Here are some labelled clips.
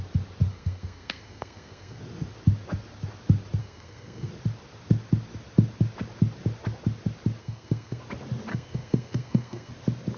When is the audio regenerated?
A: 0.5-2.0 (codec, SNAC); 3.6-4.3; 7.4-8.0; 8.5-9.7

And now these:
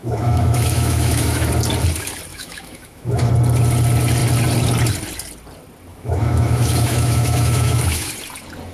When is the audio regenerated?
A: 0.0-1.5 (autoencoder, DAC-VAE); 2.3-3.3; 5.9-8.1